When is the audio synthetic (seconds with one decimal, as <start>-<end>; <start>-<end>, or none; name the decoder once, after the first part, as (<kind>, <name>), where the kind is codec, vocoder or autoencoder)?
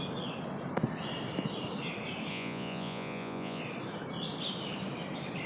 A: 2.3-3.6 (vocoder, Vocos)